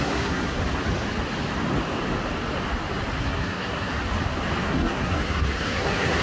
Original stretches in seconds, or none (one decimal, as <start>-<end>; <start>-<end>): 0.6-3.2; 3.9-4.6